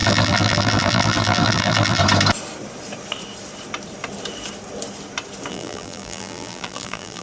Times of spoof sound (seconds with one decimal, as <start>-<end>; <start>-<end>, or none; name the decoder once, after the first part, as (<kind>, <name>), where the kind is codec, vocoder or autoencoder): 0.0-2.0 (vocoder, BigVGAN v2); 5.5-7.2